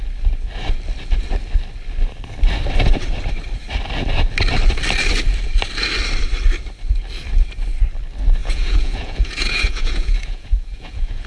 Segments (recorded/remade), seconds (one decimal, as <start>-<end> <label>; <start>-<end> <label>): 0.0-8.4 recorded; 8.4-11.3 remade